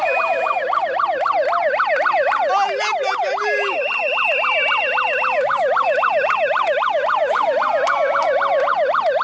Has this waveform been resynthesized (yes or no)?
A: no